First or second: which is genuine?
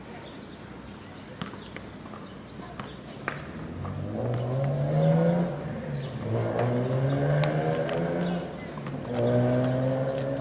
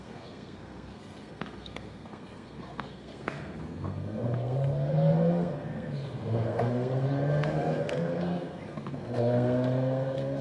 first